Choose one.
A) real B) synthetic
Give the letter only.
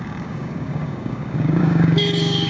B